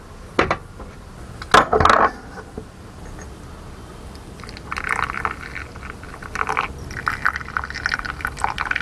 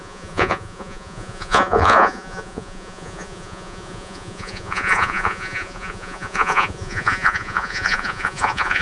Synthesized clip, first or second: second